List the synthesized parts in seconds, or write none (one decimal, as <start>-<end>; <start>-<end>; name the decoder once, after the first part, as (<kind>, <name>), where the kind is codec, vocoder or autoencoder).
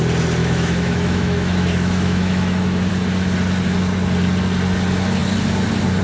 0.4-2.9 (autoencoder, DAC-VAE)